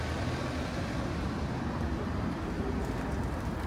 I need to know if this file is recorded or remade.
remade